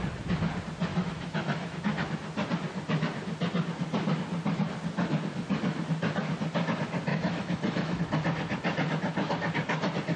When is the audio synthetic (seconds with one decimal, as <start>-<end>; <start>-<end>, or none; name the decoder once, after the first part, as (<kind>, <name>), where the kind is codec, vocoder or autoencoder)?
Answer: 0.9-1.8 (autoencoder, DAC-VAE); 7.1-8.0

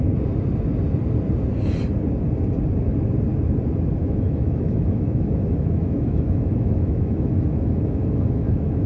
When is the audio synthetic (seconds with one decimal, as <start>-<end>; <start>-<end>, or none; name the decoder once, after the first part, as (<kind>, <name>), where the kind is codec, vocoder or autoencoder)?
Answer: 4.0-8.9 (autoencoder, DAC-VAE)

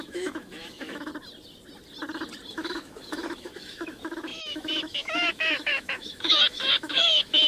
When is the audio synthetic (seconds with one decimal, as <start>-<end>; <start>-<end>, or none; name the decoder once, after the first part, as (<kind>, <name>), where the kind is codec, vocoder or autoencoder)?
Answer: 0.0-1.1 (autoencoder, DAC-VAE); 2.5-7.5

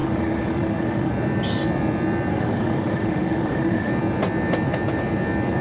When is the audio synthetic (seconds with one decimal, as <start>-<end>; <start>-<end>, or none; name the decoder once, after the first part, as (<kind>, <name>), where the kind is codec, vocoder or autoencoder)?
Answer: 0.0-1.1 (autoencoder, DAC-VAE); 2.3-3.9